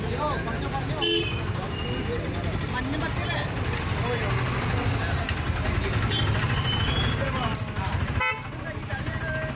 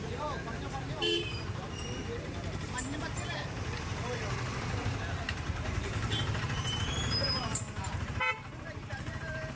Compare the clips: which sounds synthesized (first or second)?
second